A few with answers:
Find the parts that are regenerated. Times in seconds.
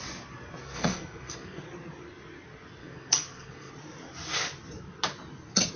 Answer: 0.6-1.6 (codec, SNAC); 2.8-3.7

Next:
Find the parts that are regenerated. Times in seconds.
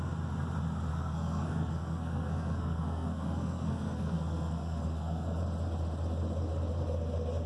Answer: 0.9-5.4 (codec, SNAC)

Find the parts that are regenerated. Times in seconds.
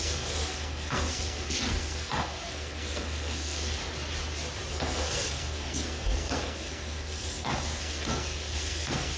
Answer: 0.0-3.8 (codec, SNAC); 4.7-9.2